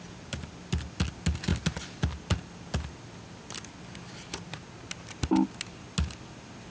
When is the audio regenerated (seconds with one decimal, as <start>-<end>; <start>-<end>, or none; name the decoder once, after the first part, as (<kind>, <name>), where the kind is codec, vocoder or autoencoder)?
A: none